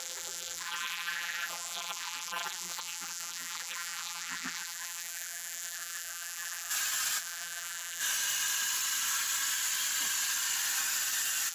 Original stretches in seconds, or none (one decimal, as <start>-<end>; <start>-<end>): 6.7-7.2; 8.0-11.5